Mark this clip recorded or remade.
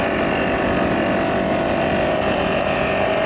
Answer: recorded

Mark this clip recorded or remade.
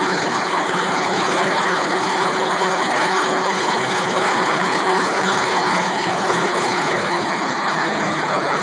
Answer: remade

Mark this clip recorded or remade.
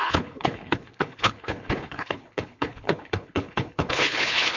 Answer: remade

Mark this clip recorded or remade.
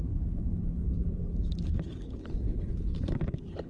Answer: remade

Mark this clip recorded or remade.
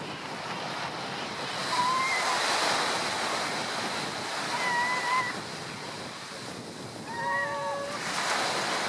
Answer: recorded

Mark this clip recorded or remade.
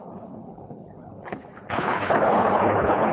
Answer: remade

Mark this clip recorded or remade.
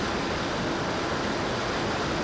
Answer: recorded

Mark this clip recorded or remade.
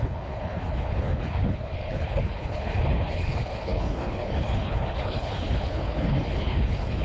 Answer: remade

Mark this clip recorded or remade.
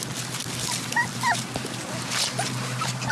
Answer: recorded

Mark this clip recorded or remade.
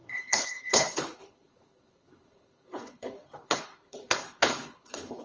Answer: remade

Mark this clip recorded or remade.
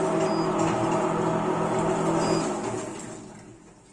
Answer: recorded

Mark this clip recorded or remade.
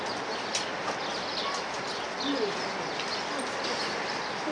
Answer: recorded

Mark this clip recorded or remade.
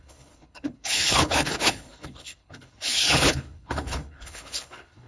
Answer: remade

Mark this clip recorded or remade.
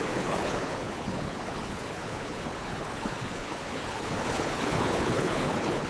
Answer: remade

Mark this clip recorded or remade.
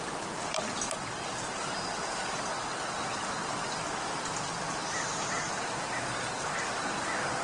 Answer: recorded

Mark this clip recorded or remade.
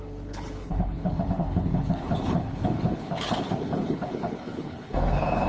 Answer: remade